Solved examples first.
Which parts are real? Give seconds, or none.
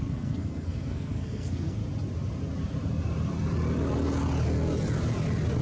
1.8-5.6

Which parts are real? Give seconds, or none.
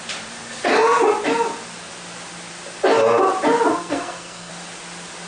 0.0-3.7; 4.5-5.3